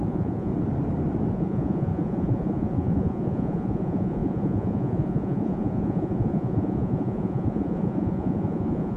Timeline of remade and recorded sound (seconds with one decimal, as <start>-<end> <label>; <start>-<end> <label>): 0.0-0.5 remade; 0.5-1.3 recorded; 1.3-9.0 remade